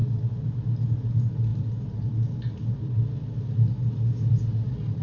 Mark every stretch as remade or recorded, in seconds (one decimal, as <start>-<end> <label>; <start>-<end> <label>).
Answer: 0.0-5.0 recorded